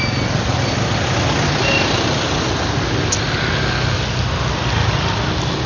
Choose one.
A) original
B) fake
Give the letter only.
A